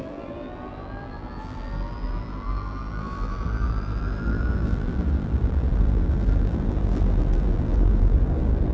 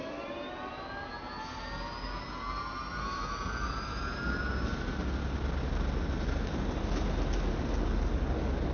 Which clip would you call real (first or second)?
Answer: second